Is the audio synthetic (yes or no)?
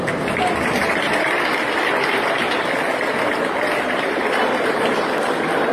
no